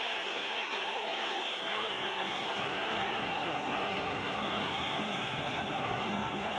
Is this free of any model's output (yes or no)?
no